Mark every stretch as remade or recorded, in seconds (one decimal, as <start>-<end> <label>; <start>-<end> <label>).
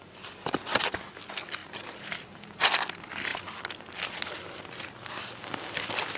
0.0-1.6 recorded; 1.6-2.1 remade; 2.1-6.2 recorded